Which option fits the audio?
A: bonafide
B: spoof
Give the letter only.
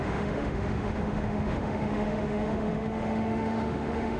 B